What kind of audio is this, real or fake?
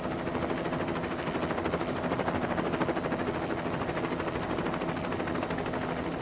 real